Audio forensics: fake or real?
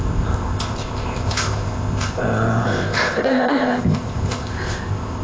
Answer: fake